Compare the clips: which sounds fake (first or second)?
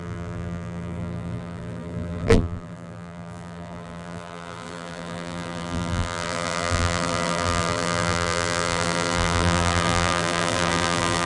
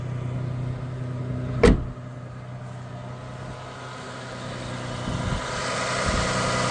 first